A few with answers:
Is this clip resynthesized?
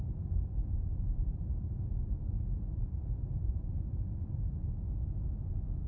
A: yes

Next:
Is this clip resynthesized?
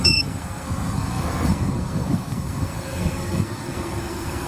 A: yes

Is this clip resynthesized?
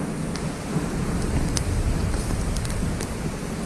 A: no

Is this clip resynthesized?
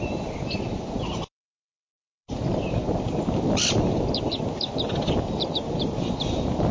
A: no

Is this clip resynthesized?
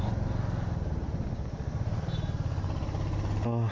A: no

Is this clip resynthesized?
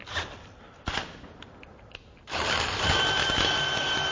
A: no